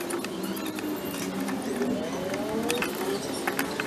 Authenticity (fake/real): real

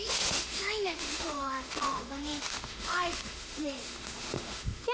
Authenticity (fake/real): fake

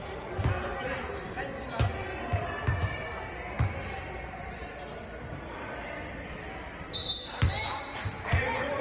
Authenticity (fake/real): real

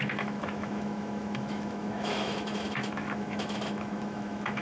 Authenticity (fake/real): fake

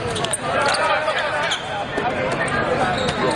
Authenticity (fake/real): real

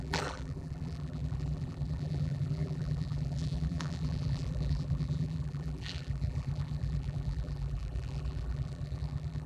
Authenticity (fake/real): fake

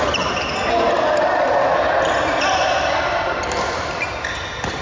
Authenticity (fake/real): real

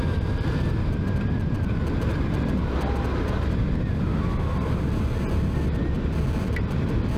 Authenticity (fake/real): real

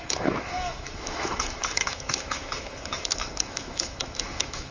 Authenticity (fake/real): fake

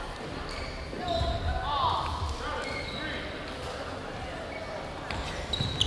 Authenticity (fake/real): real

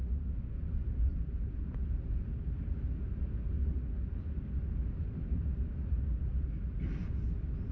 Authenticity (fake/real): real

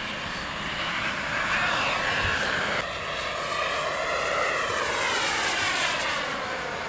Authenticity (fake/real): real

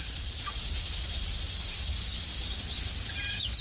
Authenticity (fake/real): real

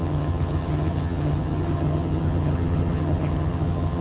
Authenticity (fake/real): fake